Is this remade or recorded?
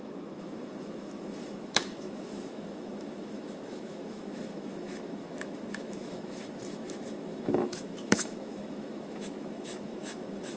remade